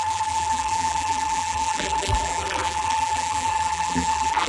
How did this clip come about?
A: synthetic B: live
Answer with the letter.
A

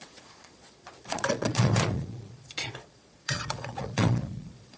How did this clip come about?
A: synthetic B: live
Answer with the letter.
A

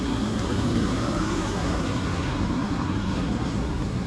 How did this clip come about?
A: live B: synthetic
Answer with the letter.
B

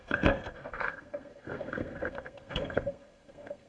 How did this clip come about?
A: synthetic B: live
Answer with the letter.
A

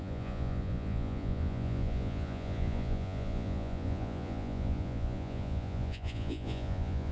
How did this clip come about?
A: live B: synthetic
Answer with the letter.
B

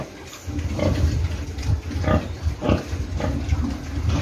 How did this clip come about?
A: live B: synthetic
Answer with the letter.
A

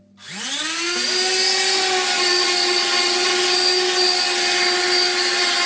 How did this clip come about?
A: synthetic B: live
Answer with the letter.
B